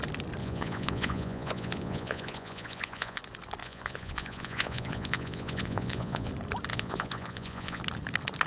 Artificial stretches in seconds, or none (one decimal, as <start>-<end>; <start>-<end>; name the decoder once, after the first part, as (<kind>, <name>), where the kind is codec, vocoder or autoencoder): 0.4-3.2 (vocoder, Vocos); 3.6-6.3; 6.7-7.8